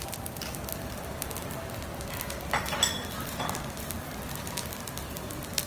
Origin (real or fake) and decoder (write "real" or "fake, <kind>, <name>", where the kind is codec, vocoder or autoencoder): real